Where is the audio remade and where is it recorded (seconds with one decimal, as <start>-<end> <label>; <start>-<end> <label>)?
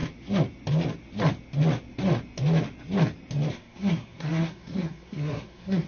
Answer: 0.0-3.5 recorded; 3.5-5.9 remade